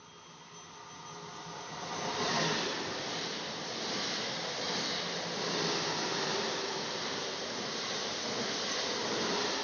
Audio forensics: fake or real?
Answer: real